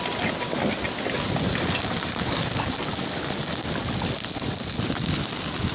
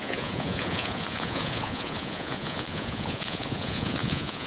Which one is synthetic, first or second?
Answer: second